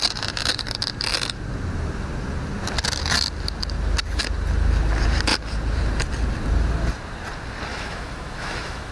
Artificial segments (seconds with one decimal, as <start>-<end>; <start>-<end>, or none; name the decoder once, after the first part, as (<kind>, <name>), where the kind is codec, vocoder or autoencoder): 7.7-8.9 (autoencoder, DAC-VAE)